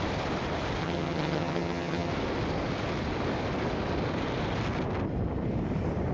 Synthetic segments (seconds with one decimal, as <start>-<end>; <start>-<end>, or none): 0.8-2.1